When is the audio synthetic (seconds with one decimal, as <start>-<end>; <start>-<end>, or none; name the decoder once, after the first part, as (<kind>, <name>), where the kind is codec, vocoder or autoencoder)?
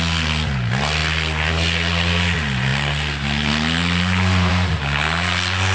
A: none